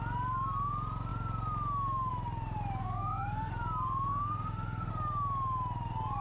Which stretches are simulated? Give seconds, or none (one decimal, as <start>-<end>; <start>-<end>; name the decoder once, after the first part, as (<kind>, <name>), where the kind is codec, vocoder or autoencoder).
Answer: 2.8-3.5 (autoencoder, DAC-VAE); 4.1-4.9